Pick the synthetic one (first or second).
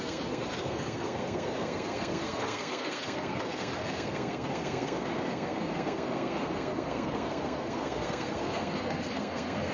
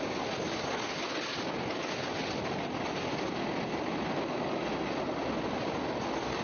first